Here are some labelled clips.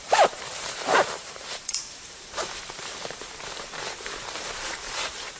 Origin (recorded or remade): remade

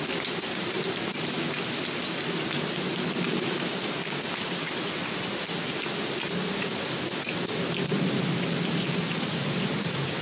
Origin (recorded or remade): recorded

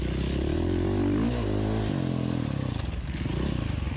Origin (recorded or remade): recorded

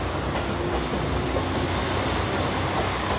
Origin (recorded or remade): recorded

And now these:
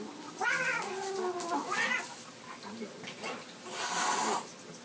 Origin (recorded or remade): recorded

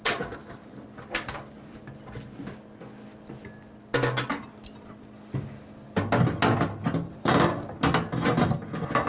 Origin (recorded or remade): recorded